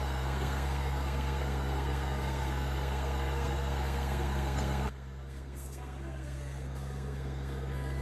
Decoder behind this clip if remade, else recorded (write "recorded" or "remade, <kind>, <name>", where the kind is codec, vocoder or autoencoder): remade, codec, SNAC